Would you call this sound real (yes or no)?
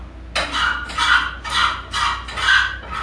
yes